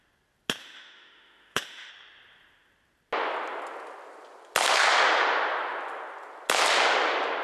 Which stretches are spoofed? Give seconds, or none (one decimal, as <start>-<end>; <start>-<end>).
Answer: 0.6-1.9